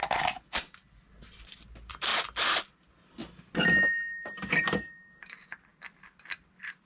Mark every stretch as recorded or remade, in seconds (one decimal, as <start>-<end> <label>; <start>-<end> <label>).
0.0-6.9 recorded